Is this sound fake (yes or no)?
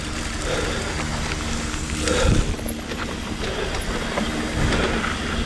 no